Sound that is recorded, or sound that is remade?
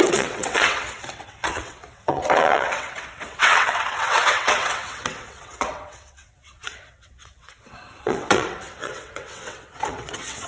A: remade